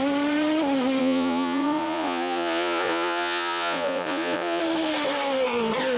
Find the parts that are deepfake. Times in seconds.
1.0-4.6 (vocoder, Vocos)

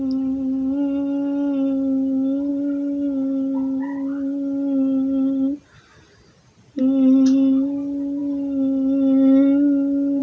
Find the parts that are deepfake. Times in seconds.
none

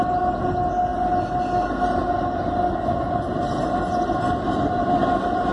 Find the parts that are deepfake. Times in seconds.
none

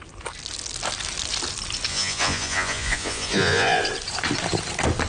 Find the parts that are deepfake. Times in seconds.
1.9-3.8 (vocoder, Vocos)

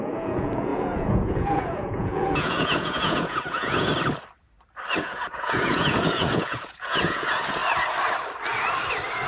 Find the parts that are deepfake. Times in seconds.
0.0-3.9 (vocoder, Vocos); 5.0-7.6

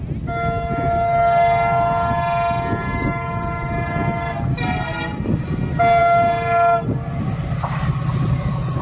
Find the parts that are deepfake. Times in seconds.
none